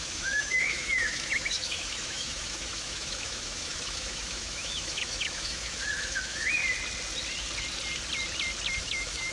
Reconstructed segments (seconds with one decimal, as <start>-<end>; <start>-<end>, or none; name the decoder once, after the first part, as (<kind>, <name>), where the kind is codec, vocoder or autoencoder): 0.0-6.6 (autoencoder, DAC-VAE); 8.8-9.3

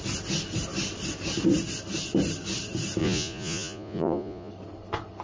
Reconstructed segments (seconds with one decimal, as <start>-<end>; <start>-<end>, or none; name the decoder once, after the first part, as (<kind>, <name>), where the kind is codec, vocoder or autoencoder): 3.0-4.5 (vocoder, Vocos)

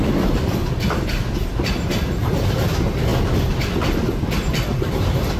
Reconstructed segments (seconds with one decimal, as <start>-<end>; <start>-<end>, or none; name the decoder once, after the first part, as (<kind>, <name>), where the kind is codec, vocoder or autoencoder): 1.5-2.6 (vocoder, BigVGAN v2); 4.7-5.4

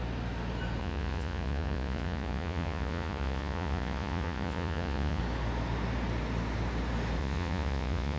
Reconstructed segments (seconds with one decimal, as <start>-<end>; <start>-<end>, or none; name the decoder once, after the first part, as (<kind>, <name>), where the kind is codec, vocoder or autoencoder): 0.8-5.2 (vocoder, Vocos); 7.2-8.2

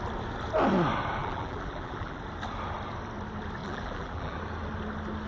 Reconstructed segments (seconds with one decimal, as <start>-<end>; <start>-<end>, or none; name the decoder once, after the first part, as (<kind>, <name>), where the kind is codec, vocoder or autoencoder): 1.2-2.2 (vocoder, BigVGAN v2); 3.6-4.4